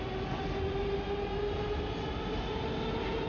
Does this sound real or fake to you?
real